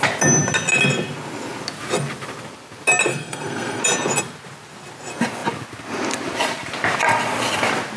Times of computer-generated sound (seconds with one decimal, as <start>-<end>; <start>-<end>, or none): 3.1-3.8